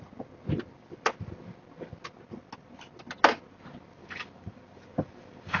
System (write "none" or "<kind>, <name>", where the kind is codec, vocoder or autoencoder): none